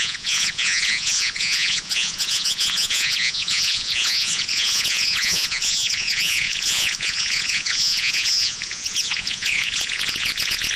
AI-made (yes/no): yes